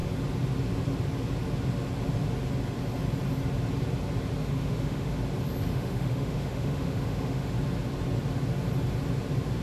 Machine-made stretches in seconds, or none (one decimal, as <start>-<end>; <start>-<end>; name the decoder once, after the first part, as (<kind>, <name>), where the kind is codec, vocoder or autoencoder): 4.4-5.1 (autoencoder, DAC-VAE); 5.7-7.5

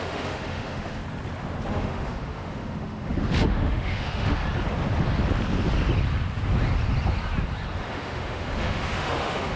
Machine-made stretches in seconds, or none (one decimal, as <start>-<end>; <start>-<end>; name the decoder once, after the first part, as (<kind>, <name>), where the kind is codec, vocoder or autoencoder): 0.0-1.0 (autoencoder, DAC-VAE); 1.7-4.4; 7.9-9.6

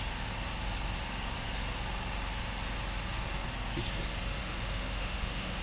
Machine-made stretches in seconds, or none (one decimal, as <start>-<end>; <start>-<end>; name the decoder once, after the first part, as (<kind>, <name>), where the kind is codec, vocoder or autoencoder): 4.4-5.6 (autoencoder, DAC-VAE)

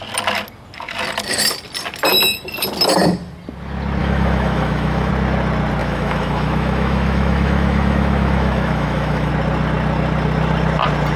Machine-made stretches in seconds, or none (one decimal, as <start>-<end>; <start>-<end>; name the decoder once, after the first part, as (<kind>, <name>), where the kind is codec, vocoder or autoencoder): 4.0-5.1 (autoencoder, DAC-VAE); 5.8-9.3

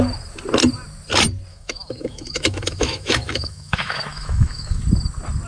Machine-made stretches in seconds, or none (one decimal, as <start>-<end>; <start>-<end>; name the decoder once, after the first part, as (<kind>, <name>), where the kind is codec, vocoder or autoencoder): 1.5-4.8 (autoencoder, DAC-VAE)